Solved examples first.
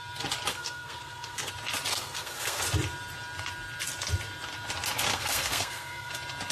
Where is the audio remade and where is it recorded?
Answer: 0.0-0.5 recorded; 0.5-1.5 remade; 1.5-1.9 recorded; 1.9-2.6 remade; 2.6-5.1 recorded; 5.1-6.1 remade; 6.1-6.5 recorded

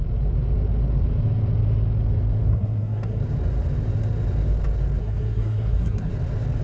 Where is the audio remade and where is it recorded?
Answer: 0.0-2.5 recorded; 2.5-3.2 remade; 3.2-5.0 recorded; 5.0-6.1 remade; 6.1-6.6 recorded

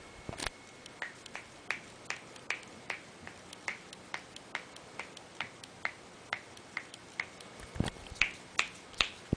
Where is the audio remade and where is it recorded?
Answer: 0.0-9.4 recorded